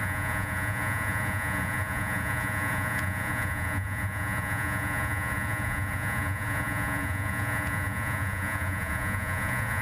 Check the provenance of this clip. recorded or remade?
remade